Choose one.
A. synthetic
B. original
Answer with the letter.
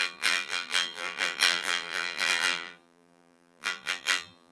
A